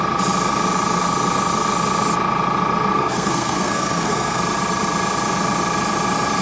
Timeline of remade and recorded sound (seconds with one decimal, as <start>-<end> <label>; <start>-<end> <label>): 0.0-2.9 recorded; 2.9-4.4 remade; 4.4-6.4 recorded